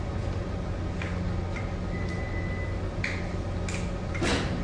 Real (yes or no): yes